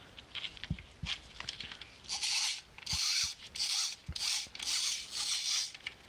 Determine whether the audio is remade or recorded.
recorded